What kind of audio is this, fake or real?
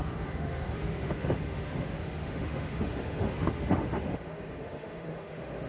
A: fake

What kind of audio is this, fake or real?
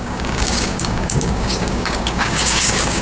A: fake